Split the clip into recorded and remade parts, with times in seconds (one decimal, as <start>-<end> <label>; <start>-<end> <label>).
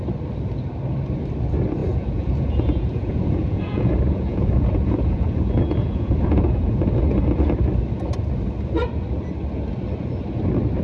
0.0-1.8 recorded; 1.8-7.0 remade; 7.0-10.8 recorded